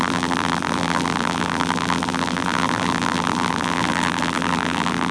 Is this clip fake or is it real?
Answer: fake